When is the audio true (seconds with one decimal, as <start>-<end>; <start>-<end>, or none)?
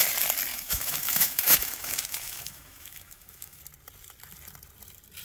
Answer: 0.0-0.5; 3.6-5.2